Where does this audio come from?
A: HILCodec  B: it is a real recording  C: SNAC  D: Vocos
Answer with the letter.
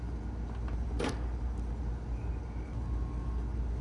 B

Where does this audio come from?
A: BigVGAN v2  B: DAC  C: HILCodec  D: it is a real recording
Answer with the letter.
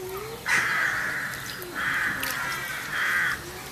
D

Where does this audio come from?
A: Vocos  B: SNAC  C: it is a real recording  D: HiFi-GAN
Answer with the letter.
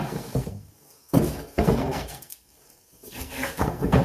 B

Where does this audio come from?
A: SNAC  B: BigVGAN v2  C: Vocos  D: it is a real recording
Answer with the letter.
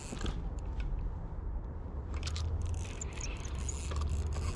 D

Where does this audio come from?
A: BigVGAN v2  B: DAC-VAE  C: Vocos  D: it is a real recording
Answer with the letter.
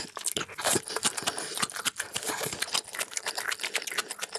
D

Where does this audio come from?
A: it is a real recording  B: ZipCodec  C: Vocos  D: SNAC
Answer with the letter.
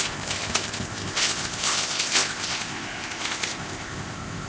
B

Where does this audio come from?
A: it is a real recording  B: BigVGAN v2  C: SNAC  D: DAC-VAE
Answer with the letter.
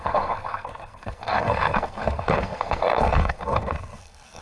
C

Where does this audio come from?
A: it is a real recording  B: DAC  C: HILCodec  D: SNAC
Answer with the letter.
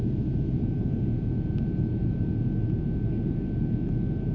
A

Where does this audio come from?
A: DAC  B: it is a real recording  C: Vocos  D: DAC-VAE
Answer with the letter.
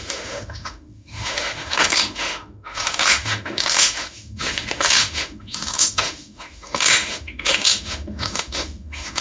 D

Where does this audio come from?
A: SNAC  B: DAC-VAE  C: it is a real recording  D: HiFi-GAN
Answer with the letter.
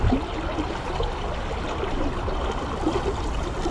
C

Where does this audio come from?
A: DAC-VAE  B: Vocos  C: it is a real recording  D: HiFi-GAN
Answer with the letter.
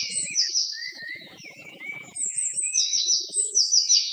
A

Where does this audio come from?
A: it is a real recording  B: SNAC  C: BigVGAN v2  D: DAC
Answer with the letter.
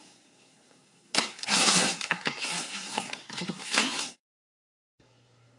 B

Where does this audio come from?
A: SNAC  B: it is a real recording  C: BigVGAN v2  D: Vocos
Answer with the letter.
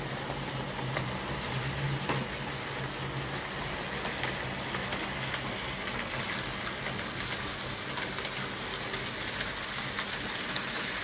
B